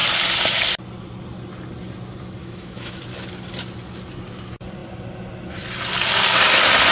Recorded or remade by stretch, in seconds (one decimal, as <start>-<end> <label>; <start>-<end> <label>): 0.0-2.4 recorded; 2.4-3.0 remade; 3.0-6.9 recorded